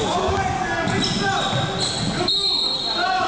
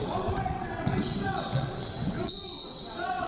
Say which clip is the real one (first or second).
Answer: first